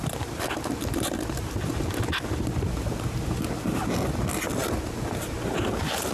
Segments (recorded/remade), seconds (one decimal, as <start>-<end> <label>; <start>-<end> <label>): 0.0-6.1 recorded